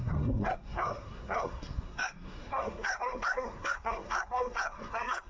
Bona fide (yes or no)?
no